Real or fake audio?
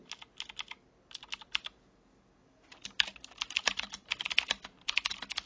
real